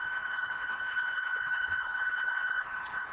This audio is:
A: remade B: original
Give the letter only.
A